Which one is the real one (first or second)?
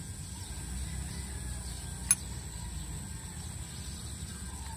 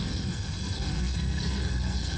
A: first